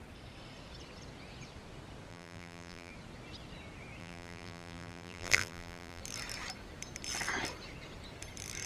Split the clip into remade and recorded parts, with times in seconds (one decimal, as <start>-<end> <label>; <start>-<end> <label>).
0.0-2.1 recorded; 2.1-2.9 remade; 2.9-4.0 recorded; 4.0-6.0 remade; 6.0-8.7 recorded